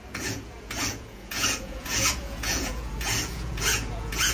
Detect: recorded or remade remade